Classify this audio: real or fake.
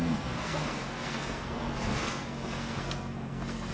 fake